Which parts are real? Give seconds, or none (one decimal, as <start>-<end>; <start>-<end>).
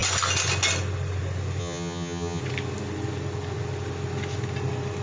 0.0-1.6; 2.4-5.0